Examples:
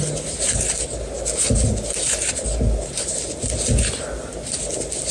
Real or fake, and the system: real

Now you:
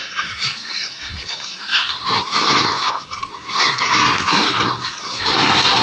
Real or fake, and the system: fake, codec, SNAC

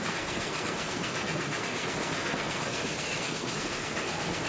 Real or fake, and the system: fake, codec, SNAC